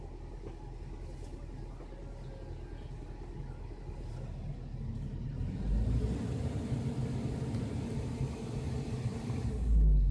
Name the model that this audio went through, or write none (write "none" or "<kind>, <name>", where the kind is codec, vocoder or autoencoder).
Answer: none